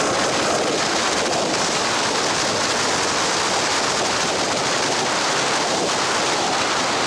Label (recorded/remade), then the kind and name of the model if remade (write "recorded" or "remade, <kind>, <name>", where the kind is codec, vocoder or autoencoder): recorded